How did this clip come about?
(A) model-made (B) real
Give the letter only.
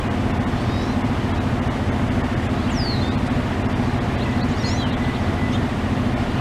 B